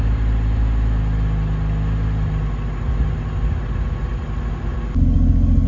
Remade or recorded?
recorded